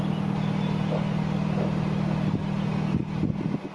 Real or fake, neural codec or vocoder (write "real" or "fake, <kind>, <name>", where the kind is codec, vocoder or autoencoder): real